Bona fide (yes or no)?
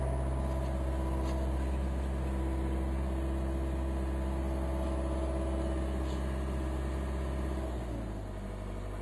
yes